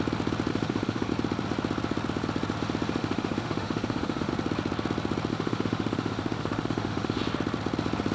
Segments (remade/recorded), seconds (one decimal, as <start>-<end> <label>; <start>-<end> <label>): 0.0-0.5 recorded; 0.5-1.1 remade; 1.1-3.0 recorded; 3.0-4.3 remade; 4.3-5.3 recorded; 5.3-7.2 remade; 7.2-8.1 recorded